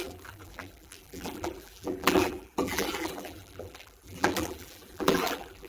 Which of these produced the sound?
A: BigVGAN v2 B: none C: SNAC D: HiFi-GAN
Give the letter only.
A